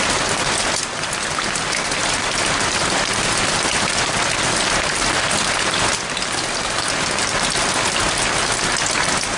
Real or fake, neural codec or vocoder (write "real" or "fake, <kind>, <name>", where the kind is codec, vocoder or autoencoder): real